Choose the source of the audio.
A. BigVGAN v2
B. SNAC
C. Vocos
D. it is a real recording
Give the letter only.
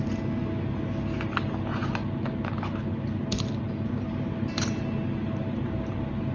D